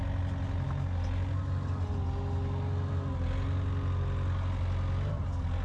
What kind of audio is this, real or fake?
real